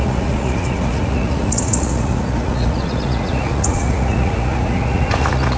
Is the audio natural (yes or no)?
no